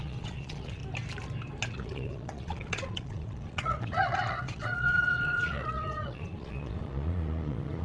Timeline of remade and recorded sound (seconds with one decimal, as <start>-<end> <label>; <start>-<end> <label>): 0.0-0.8 remade; 0.8-1.7 recorded; 1.7-7.8 remade